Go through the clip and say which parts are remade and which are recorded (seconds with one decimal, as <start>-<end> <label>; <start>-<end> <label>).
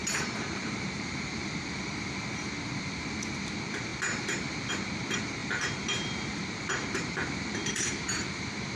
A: 0.0-1.9 remade; 1.9-5.4 recorded; 5.4-8.4 remade; 8.4-8.8 recorded